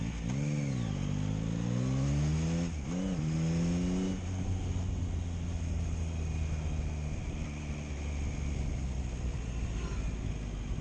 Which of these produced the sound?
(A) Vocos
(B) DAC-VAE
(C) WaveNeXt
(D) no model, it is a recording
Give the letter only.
D